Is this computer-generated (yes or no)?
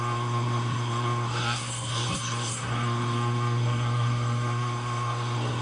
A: yes